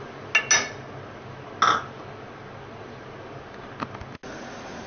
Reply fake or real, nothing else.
real